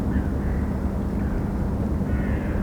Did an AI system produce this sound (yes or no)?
no